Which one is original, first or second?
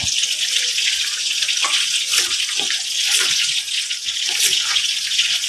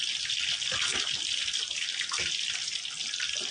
second